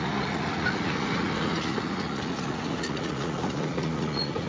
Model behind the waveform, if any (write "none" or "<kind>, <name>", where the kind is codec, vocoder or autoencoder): vocoder, Vocos